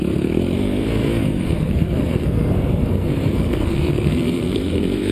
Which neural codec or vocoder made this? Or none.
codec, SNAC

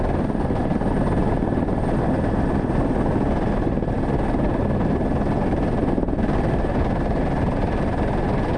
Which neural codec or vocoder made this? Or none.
none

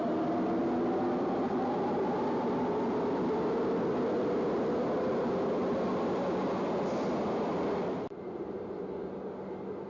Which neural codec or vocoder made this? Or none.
none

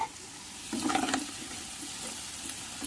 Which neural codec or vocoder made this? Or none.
none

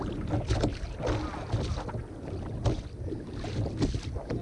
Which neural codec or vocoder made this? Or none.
none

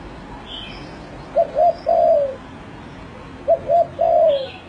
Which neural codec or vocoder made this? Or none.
none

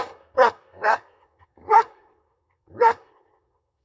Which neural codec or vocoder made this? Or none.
codec, SNAC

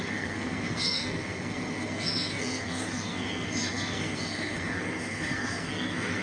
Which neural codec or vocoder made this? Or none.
codec, SNAC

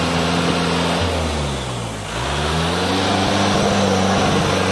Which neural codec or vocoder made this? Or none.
none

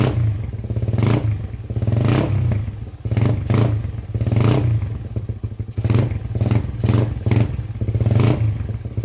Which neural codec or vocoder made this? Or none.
none